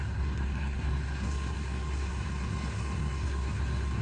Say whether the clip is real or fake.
fake